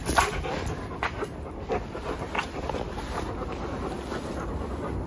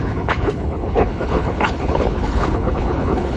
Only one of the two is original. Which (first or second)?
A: first